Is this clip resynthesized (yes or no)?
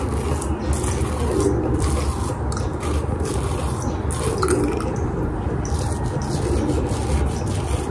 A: no